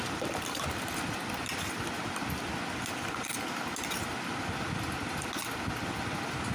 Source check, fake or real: real